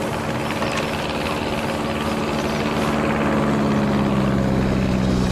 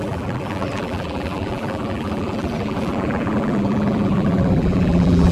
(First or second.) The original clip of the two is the first